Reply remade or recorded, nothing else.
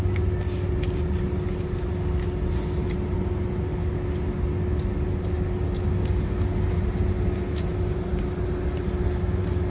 recorded